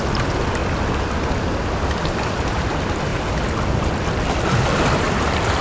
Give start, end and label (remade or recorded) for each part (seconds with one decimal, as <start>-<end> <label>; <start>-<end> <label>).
0.0-0.6 remade; 0.6-1.3 recorded; 1.3-5.6 remade